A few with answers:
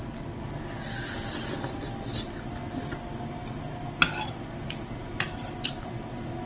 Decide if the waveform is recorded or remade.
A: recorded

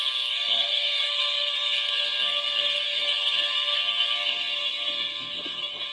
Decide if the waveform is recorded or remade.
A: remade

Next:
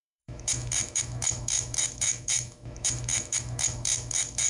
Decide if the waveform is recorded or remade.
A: remade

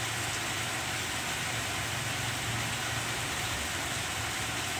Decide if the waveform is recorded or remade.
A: recorded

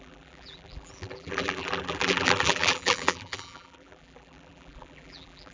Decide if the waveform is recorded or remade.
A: remade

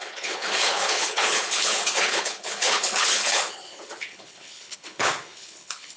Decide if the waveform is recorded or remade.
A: remade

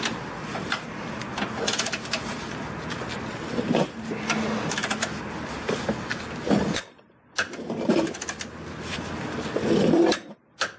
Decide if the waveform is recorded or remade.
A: recorded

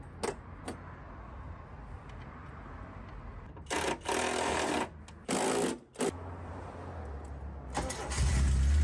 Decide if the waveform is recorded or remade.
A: recorded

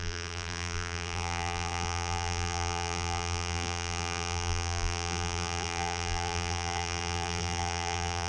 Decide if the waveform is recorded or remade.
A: remade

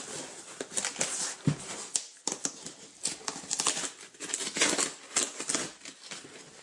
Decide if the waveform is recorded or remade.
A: recorded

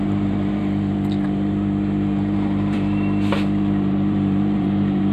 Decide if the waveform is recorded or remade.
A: remade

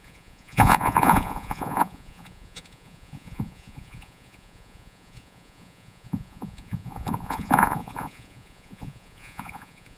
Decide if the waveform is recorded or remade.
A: remade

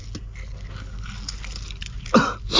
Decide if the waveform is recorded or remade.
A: recorded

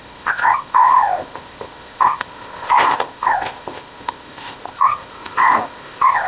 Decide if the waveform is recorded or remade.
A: remade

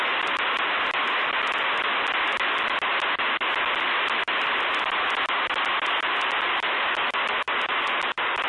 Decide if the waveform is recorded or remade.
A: recorded